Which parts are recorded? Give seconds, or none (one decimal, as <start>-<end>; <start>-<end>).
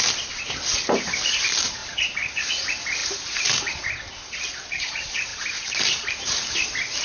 0.0-1.8; 2.5-3.0; 3.8-5.3; 6.5-7.0